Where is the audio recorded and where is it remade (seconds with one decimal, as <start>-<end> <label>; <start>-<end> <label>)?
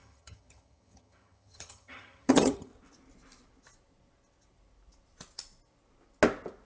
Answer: 0.0-2.7 remade; 2.7-6.7 recorded